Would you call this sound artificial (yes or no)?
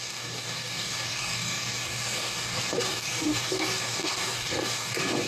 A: yes